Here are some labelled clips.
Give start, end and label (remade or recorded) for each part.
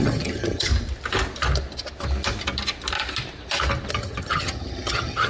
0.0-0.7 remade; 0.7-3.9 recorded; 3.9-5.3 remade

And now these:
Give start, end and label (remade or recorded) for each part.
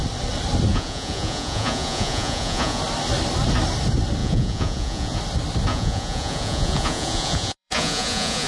0.0-0.7 recorded; 0.7-2.8 remade; 2.8-4.2 recorded; 4.2-5.2 remade; 5.2-5.7 recorded; 5.7-8.5 remade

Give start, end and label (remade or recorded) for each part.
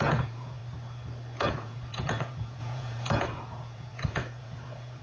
0.0-0.6 remade; 0.6-1.5 recorded; 1.5-5.0 remade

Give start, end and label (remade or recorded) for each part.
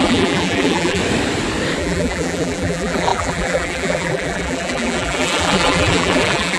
0.0-1.0 remade; 1.0-1.8 recorded; 1.8-6.6 remade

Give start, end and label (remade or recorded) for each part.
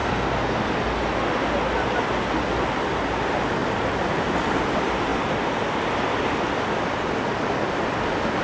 0.0-0.7 remade; 0.7-8.4 recorded